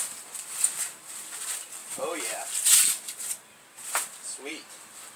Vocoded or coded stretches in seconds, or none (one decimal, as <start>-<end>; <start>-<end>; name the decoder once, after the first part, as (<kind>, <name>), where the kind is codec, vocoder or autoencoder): 1.8-3.3 (vocoder, BigVGAN v2); 3.8-4.5